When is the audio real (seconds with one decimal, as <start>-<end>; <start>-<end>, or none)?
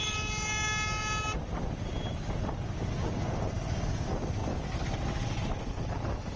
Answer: 0.0-4.4; 5.6-6.4